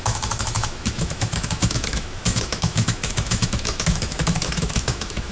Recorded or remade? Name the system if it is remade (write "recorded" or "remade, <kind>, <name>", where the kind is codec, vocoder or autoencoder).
remade, autoencoder, DAC-VAE